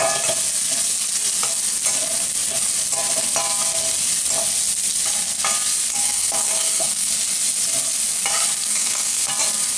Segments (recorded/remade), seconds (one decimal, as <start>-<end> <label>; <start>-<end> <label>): 0.0-5.9 recorded; 5.9-7.1 remade; 7.1-8.7 recorded; 8.7-9.3 remade; 9.3-9.8 recorded